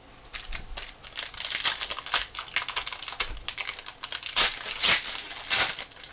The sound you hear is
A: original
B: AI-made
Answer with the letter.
A